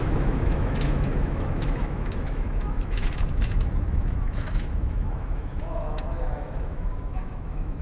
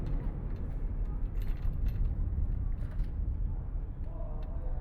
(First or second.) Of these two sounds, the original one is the second